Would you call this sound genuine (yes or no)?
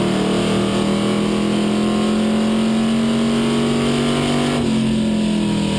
yes